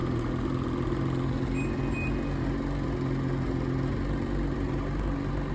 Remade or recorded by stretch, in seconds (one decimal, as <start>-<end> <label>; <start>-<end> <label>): 0.0-5.5 recorded